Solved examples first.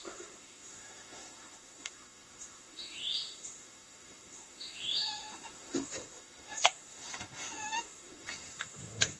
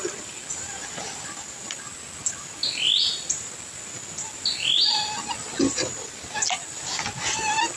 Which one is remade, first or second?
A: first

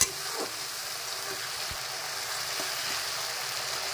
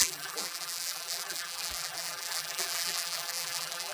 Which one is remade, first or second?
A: second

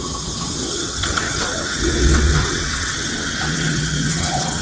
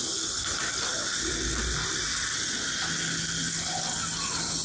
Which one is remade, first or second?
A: first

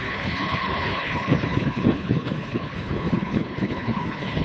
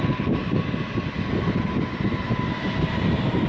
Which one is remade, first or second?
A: first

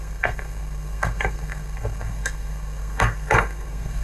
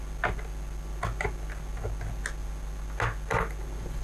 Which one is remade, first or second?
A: first